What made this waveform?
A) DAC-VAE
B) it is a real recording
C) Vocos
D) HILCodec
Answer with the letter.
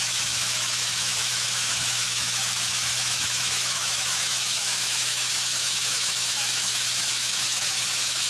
A